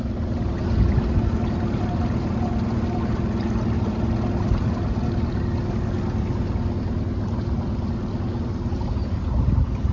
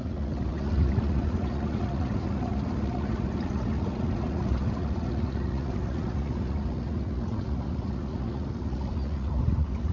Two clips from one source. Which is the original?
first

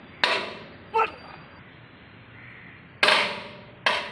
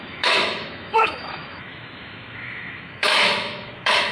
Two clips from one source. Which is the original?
first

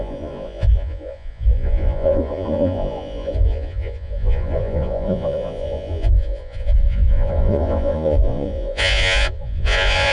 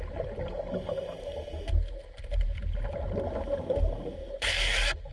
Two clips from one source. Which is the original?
second